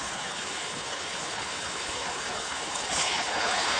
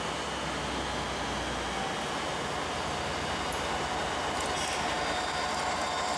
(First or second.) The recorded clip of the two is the second